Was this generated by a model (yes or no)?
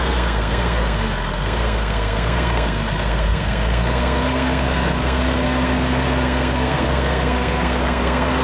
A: yes